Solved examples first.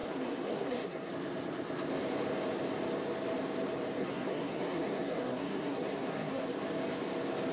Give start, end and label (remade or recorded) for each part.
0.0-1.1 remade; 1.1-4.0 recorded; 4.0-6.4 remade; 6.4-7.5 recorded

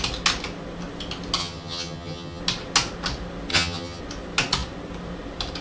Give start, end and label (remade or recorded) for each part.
0.0-1.4 recorded; 1.4-2.4 remade; 2.4-3.5 recorded; 3.5-4.0 remade; 4.0-5.6 recorded

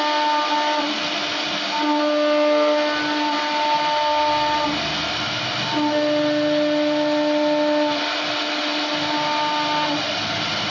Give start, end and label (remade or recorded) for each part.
0.0-10.7 recorded

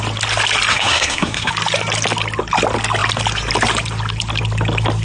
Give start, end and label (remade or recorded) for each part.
0.0-0.7 recorded; 0.7-1.5 remade; 1.5-5.0 recorded

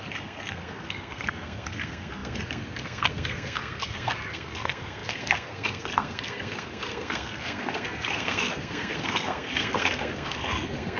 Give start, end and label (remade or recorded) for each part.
0.0-11.0 remade

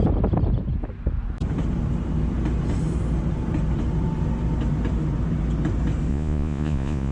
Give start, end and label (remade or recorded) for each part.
0.0-6.1 recorded; 6.1-7.1 remade

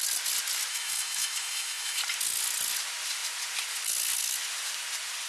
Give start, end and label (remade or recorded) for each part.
0.0-0.7 recorded; 0.7-2.0 remade; 2.0-5.3 recorded